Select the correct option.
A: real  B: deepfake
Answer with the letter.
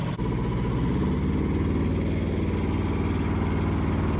A